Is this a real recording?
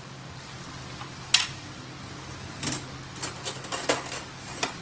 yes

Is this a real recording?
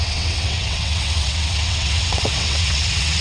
no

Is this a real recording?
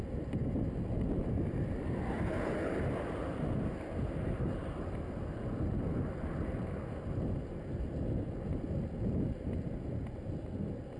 yes